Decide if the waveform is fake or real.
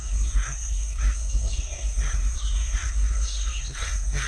fake